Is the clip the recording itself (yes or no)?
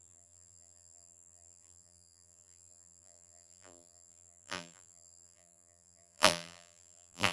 no